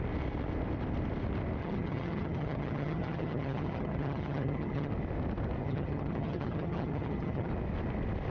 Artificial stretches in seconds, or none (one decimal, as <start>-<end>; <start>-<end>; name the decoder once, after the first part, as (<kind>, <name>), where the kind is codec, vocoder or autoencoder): 1.6-4.9 (vocoder, HiFi-GAN); 5.6-7.5